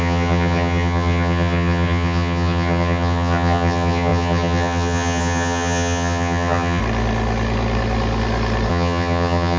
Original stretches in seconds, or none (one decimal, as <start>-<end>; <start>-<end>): 6.8-8.7